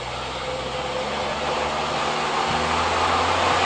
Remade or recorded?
recorded